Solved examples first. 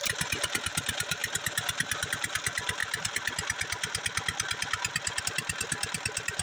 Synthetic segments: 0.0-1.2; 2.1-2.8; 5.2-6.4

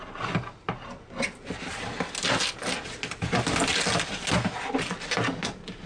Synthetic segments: none

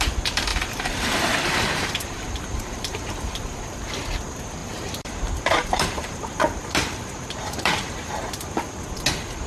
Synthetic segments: 0.5-3.9; 4.6-8.6

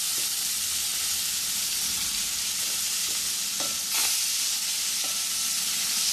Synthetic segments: none

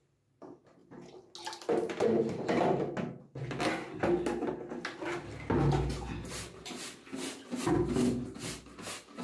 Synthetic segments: none

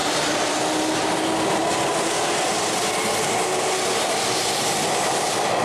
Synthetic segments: none

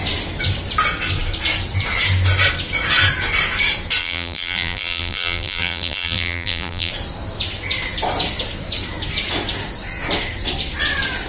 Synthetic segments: 4.0-6.9